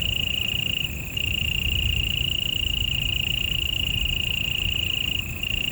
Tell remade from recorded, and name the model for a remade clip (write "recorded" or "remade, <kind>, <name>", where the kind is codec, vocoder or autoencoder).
recorded